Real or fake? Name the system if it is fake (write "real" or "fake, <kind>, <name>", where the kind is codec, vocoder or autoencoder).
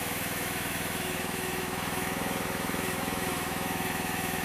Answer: fake, autoencoder, DAC-VAE